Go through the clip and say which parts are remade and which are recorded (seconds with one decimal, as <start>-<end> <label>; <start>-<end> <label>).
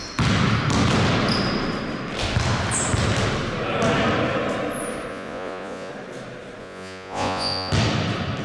0.0-5.1 recorded; 5.1-5.9 remade; 5.9-6.6 recorded; 6.6-7.7 remade; 7.7-8.4 recorded